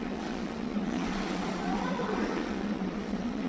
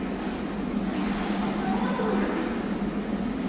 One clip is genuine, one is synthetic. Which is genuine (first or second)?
second